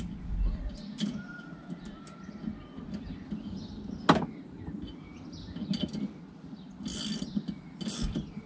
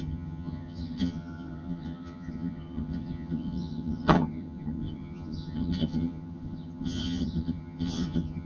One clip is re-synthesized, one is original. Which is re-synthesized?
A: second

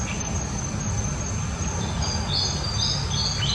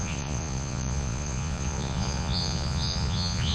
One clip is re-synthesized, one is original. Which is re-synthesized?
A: second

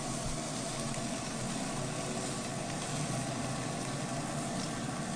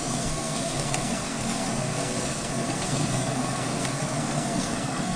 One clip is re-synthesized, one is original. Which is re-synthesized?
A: second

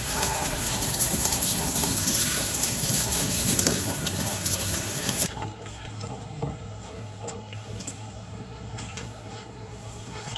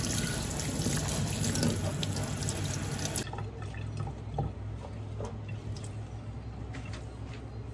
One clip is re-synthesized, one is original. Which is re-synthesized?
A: first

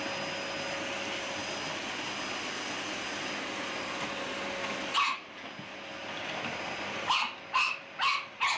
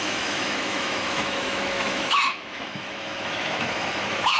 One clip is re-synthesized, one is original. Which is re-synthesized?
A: second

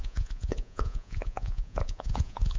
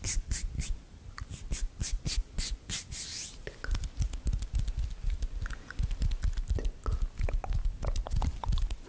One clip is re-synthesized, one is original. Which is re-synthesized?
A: first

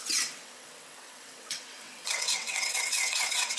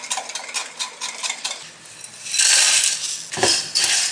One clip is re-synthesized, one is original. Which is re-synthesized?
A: first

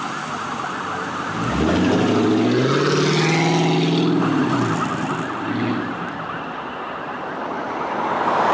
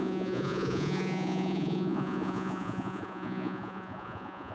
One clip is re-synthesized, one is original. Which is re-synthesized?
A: second